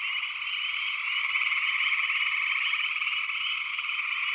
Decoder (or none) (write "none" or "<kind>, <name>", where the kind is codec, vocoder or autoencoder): none